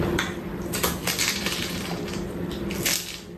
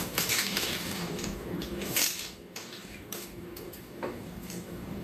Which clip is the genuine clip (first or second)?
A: first